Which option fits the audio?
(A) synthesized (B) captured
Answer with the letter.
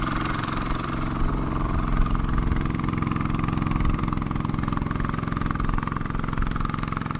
A